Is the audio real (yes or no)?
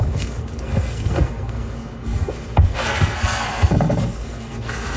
no